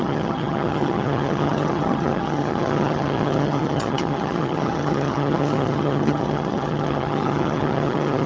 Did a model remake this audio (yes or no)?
yes